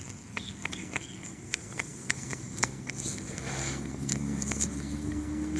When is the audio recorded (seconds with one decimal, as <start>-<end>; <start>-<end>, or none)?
none